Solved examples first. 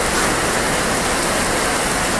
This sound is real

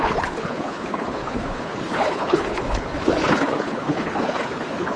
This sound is fake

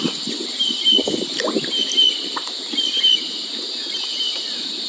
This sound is real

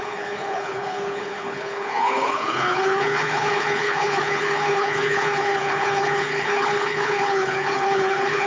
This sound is fake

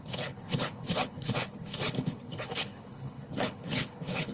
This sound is fake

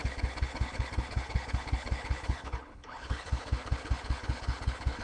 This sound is fake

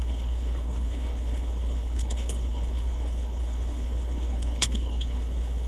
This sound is fake